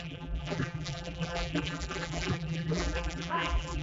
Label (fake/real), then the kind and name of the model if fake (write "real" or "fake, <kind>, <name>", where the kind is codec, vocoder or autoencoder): fake, vocoder, BigVGAN v2